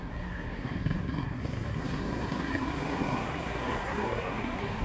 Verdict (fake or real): fake